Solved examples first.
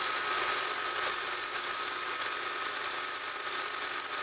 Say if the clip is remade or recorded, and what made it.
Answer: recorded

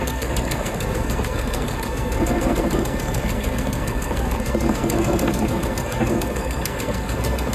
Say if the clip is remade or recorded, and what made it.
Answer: remade, codec, SNAC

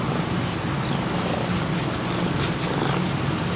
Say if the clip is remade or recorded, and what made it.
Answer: recorded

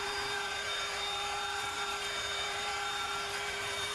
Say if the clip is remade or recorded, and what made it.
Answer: remade, vocoder, BigVGAN v2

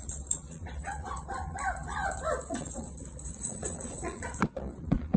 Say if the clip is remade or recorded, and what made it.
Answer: remade, vocoder, Vocos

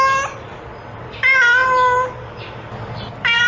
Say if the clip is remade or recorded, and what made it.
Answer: recorded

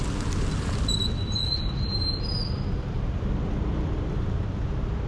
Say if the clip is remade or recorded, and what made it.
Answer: recorded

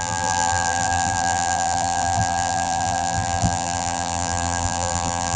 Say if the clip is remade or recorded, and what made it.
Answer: remade, vocoder, BigVGAN v2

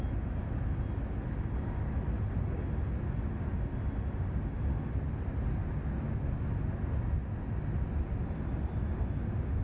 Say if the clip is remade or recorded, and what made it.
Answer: recorded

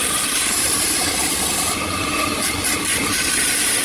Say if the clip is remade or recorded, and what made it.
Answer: remade, vocoder, BigVGAN v2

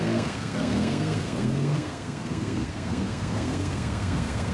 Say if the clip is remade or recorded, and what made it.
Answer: remade, codec, SNAC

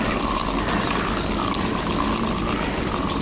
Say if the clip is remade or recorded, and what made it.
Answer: recorded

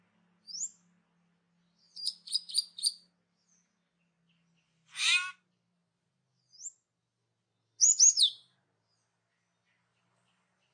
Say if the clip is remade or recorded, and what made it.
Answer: recorded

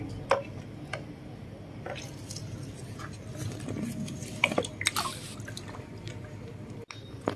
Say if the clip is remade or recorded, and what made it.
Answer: recorded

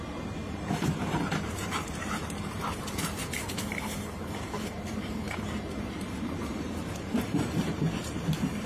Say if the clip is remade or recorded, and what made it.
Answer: remade, vocoder, BigVGAN v2